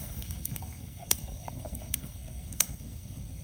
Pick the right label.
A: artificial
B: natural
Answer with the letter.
A